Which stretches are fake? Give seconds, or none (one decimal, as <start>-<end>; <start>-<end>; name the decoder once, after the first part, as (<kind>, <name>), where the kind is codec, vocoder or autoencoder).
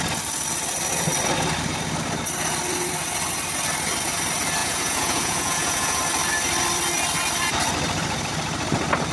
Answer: 4.6-6.0 (vocoder, Vocos)